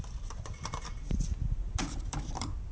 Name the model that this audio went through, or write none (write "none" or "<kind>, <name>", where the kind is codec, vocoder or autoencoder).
vocoder, BigVGAN v2